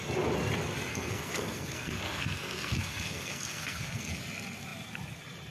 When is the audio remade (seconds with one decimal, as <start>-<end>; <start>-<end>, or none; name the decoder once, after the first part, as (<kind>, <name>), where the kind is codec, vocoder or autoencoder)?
0.9-4.2 (codec, SNAC)